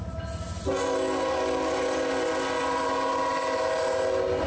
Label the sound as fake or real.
real